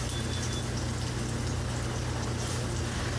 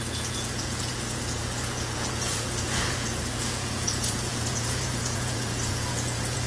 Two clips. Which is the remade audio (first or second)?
second